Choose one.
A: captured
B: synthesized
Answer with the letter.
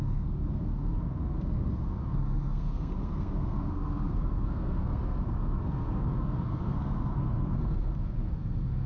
B